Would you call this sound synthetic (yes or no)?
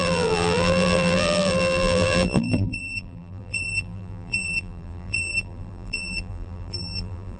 yes